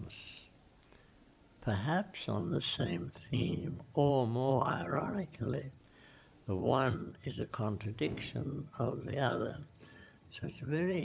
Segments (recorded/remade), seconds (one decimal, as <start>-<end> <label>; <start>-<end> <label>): 0.0-2.4 recorded; 2.4-4.1 remade; 4.1-4.5 recorded; 4.5-5.8 remade; 5.8-6.6 recorded; 6.6-7.5 remade; 7.5-8.4 recorded; 8.4-11.0 remade